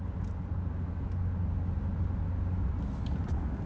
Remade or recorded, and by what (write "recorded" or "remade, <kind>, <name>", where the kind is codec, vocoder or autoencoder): recorded